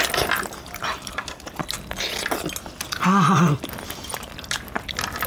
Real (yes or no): yes